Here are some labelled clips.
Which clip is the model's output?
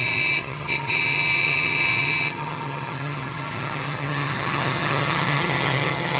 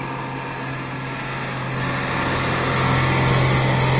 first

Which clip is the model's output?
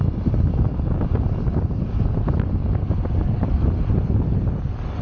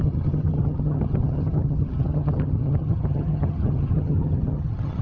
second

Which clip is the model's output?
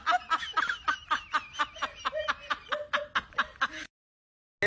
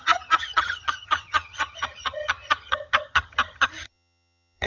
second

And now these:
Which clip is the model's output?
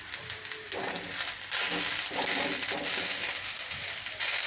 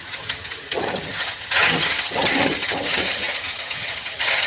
second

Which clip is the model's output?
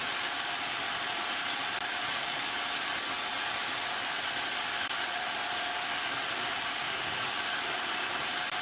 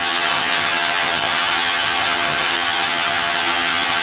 second